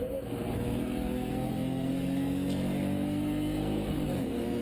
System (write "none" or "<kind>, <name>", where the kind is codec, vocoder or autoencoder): codec, SNAC